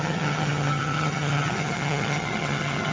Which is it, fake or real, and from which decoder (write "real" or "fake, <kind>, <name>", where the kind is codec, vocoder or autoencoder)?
fake, vocoder, HiFi-GAN